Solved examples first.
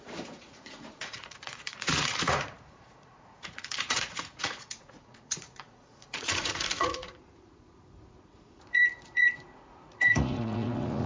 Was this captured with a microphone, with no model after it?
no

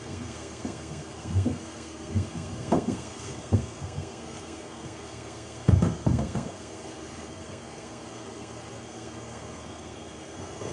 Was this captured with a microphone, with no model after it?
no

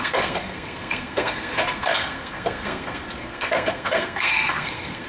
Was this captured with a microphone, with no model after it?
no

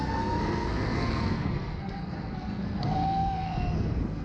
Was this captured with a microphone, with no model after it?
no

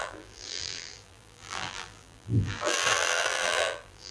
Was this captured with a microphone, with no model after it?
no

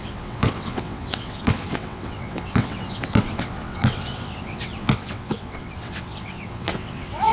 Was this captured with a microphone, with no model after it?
no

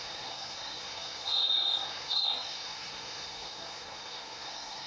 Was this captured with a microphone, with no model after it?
no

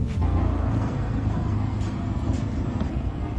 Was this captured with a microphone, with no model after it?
no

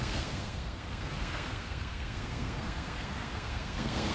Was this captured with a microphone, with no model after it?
no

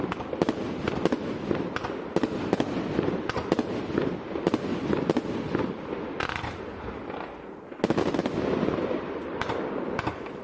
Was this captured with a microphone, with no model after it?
yes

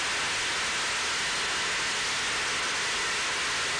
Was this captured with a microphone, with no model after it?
yes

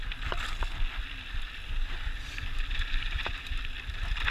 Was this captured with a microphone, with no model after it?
yes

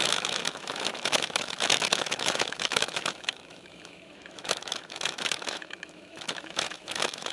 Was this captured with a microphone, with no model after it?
no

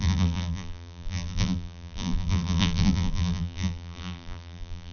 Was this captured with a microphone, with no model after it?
no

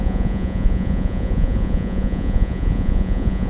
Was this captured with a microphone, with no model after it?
no